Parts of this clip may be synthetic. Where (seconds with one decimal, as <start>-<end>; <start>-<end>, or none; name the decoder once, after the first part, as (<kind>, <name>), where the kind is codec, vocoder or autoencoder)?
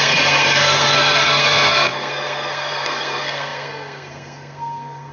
0.0-5.1 (codec, SNAC)